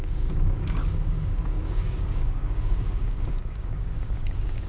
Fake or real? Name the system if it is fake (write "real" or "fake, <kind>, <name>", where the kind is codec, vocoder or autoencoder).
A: fake, codec, DAC